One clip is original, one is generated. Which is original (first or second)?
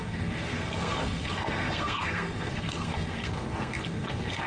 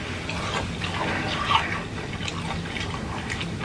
second